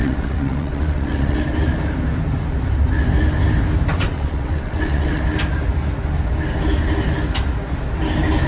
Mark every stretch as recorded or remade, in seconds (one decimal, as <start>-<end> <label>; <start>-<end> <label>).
0.0-1.4 remade; 1.4-3.9 recorded; 3.9-5.2 remade; 5.2-8.5 recorded